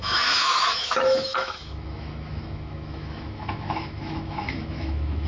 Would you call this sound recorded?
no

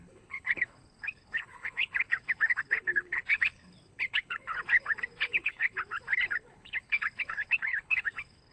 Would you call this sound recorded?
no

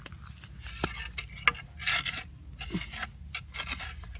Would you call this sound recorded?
yes